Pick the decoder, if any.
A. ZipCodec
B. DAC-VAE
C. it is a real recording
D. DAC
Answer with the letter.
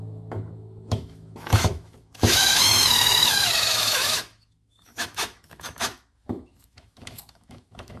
B